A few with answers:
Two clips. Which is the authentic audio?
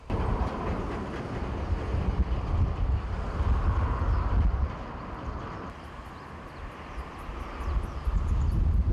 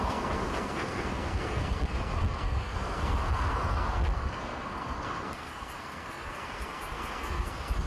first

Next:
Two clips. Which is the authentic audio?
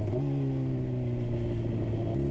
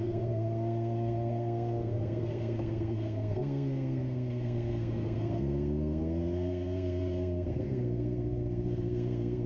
first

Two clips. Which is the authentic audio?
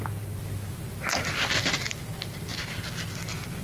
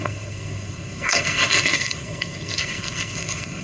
first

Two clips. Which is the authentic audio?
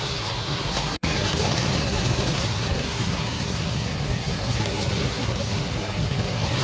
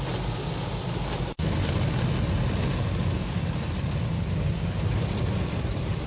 second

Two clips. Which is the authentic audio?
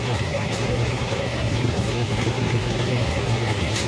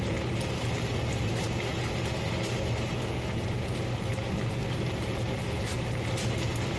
second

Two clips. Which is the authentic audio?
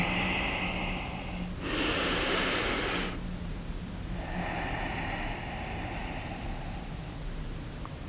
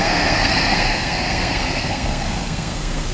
first